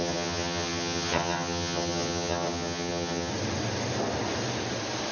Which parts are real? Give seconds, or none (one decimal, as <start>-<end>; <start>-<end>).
3.3-5.1